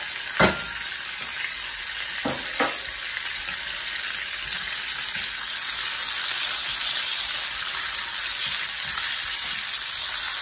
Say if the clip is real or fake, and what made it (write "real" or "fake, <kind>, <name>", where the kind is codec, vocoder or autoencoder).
real